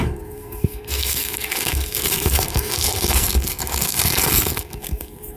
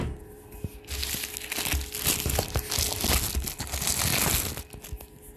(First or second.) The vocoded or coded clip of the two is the first